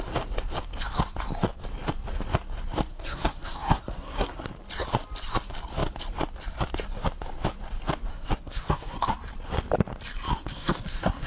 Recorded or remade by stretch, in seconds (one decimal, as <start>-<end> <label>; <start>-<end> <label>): 0.0-2.9 recorded; 2.9-4.5 remade; 4.5-8.1 recorded; 8.1-9.0 remade; 9.0-10.5 recorded; 10.5-11.3 remade